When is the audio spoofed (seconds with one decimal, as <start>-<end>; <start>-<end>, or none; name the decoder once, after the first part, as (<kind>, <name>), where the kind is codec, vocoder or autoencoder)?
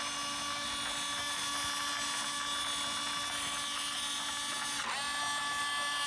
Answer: none